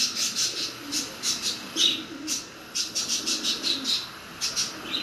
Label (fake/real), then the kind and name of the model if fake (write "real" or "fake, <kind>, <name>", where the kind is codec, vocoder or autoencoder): real